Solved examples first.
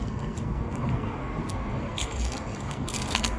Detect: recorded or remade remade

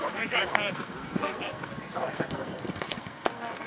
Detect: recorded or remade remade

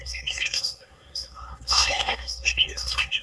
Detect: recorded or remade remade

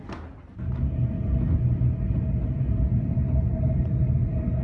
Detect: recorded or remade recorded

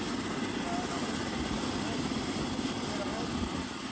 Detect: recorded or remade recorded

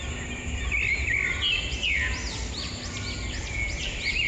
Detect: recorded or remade recorded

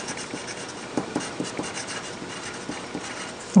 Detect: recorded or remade recorded